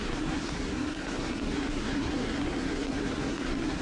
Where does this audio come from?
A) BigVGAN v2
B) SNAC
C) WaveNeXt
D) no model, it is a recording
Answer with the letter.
B